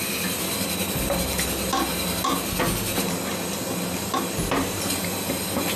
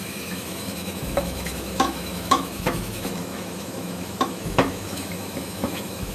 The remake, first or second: second